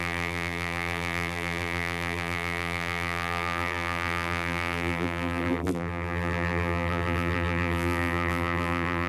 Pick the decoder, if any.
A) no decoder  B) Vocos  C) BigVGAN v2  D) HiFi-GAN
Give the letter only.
C